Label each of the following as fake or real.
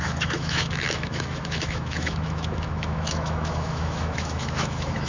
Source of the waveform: fake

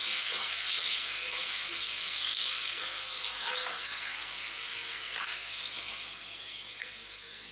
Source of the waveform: fake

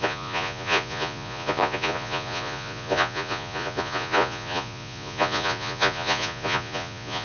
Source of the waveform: fake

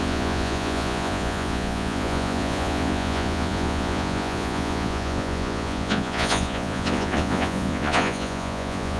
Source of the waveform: fake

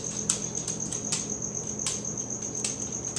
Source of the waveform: real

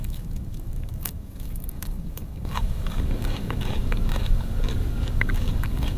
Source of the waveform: fake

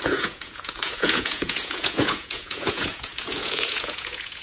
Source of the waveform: fake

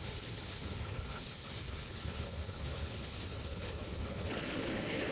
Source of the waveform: fake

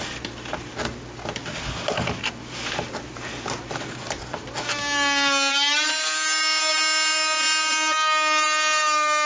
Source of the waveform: real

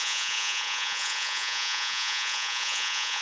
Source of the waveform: fake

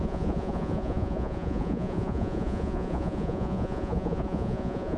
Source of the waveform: fake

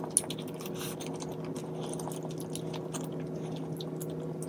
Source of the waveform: real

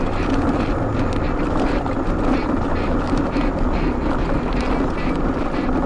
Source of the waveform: real